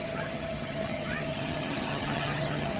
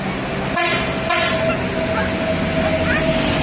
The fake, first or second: first